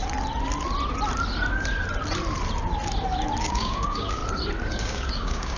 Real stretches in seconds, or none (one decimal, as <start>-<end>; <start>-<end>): 0.0-3.4; 4.2-4.7

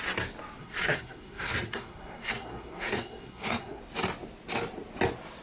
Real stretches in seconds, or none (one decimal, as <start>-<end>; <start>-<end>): 0.0-0.6; 3.8-5.4

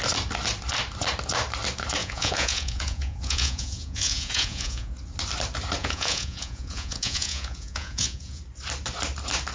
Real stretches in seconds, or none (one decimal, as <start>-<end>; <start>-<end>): 0.0-2.0; 4.9-5.8; 8.4-9.5

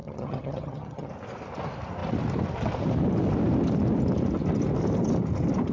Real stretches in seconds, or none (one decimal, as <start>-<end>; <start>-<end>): 1.1-5.7